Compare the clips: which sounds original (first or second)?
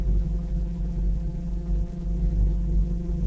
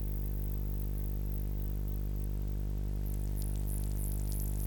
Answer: second